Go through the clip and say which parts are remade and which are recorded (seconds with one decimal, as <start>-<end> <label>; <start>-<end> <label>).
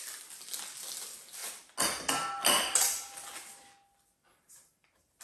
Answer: 0.0-5.2 recorded